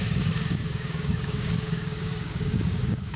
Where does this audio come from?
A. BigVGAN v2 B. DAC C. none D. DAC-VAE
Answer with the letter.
B